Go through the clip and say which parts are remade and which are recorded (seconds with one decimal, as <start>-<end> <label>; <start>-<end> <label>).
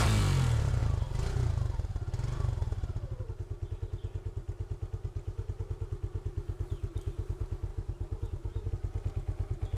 0.0-7.7 recorded; 7.7-8.7 remade; 8.7-9.8 recorded